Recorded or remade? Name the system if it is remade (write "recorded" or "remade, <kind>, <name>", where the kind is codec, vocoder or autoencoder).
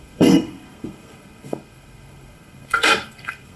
remade, codec, SNAC